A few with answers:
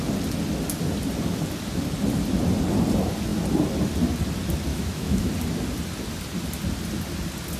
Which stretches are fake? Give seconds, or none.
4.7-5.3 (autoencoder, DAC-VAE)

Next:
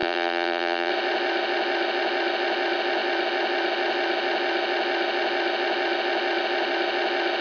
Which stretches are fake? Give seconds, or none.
0.0-0.9 (vocoder, BigVGAN v2)